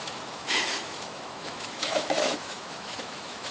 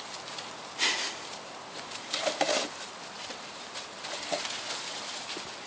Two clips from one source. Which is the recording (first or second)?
second